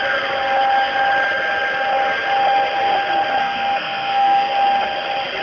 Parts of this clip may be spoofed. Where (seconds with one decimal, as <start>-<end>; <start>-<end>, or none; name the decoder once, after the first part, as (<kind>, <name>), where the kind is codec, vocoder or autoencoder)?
3.4-4.5 (codec, SNAC)